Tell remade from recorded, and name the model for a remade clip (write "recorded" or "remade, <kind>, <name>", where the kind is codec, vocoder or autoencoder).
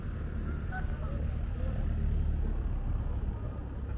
recorded